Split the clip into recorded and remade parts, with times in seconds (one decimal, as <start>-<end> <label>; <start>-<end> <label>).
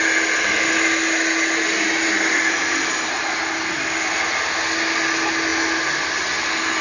0.0-6.8 recorded